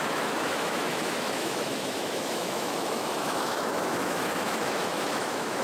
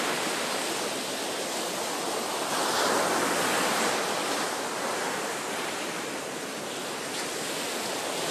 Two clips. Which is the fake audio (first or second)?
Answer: first